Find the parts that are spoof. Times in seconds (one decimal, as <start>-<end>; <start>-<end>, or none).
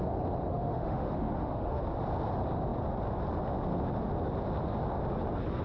0.5-1.8